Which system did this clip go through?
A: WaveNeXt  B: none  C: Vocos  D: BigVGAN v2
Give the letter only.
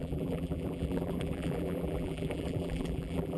D